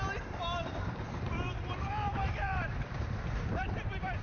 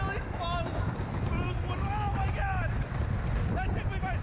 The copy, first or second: first